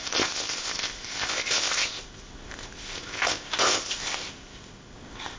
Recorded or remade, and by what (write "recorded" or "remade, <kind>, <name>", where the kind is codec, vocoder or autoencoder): remade, codec, ZipCodec